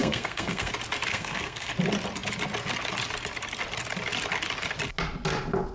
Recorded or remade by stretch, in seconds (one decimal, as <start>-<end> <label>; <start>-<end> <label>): 0.0-0.7 remade; 0.7-1.1 recorded; 1.1-1.7 remade; 1.7-5.7 recorded